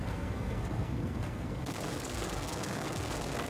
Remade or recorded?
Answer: remade